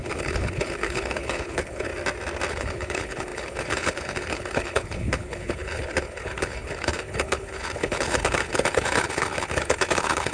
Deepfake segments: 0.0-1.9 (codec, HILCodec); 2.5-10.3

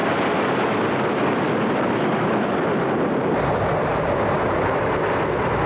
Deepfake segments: 3.9-5.7 (vocoder, BigVGAN v2)

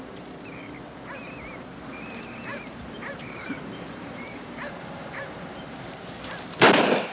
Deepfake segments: 2.5-6.2 (vocoder, BigVGAN v2)

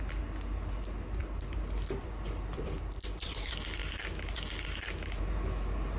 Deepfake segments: 1.2-3.4 (vocoder, BigVGAN v2)